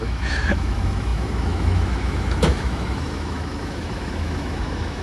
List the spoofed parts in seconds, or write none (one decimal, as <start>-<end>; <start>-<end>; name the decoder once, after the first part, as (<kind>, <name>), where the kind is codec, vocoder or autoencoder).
0.0-5.0 (autoencoder, DAC-VAE)